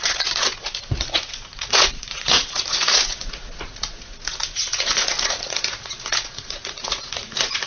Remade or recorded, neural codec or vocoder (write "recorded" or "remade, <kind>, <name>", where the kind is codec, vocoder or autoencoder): remade, vocoder, Vocos